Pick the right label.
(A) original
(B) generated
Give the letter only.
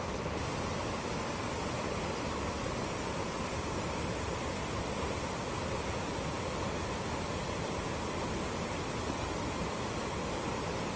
A